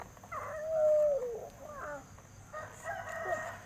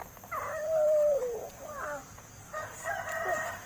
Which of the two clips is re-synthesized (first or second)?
second